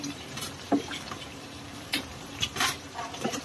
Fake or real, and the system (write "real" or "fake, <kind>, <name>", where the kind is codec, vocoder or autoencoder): fake, vocoder, BigVGAN v2